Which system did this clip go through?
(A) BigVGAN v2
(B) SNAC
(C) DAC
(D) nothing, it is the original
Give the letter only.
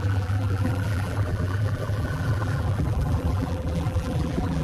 A